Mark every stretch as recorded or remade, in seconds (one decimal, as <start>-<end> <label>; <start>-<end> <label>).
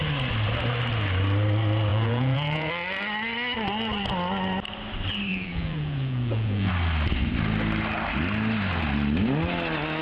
0.0-1.9 recorded; 1.9-2.7 remade; 2.7-5.3 recorded; 5.3-6.7 remade; 6.7-10.0 recorded